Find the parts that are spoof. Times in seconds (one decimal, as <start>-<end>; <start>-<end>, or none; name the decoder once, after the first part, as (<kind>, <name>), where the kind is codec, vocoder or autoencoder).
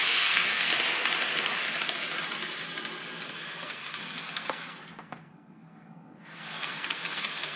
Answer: 0.0-0.7 (codec, SNAC); 3.3-7.6